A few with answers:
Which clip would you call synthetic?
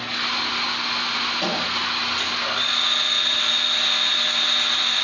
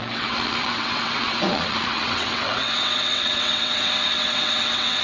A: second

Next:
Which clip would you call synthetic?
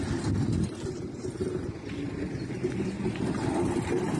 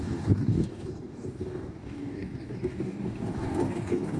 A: second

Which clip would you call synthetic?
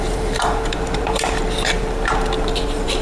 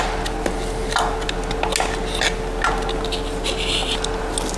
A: first